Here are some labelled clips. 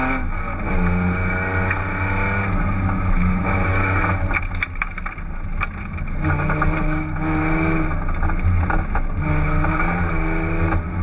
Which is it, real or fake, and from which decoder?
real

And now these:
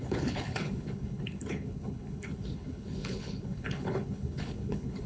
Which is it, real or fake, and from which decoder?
fake, codec, HILCodec